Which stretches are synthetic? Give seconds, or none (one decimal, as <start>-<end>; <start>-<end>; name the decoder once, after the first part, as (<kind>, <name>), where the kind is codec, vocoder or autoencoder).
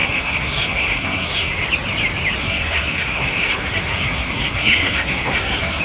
0.0-1.6 (codec, SNAC); 2.4-5.8